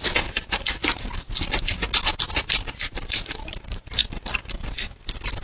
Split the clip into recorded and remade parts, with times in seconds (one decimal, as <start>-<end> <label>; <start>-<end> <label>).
0.0-0.8 recorded; 0.8-4.0 remade; 4.0-5.4 recorded